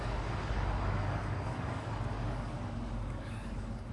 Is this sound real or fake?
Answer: fake